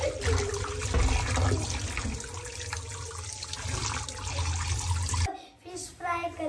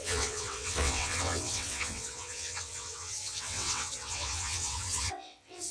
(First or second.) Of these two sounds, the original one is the first